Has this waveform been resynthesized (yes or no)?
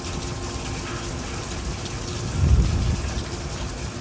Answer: no